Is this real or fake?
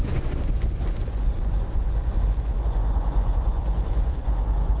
fake